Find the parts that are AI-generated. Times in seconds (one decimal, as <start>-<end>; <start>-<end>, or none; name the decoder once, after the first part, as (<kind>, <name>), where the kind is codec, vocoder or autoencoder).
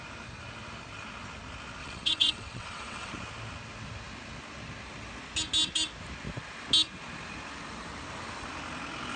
1.8-3.1 (vocoder, WaveNeXt)